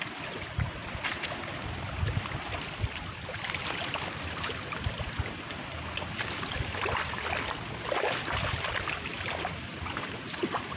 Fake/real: real